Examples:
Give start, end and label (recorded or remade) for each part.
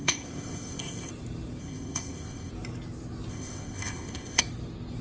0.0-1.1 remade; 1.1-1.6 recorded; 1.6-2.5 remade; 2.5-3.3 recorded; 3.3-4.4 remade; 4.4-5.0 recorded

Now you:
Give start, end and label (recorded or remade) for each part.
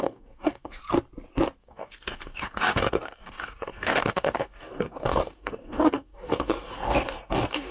0.0-0.8 remade; 0.8-1.6 recorded; 1.6-7.7 remade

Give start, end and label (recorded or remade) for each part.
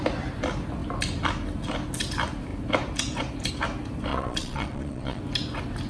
0.0-4.1 recorded; 4.1-5.2 remade; 5.2-5.9 recorded